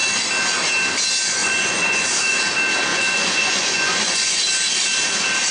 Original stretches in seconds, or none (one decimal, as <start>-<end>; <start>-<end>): 0.0-1.4; 2.4-2.9; 4.4-5.5